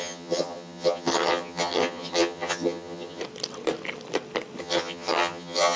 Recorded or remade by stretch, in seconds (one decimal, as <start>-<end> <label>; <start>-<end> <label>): 0.0-3.2 remade; 3.2-4.6 recorded; 4.6-5.8 remade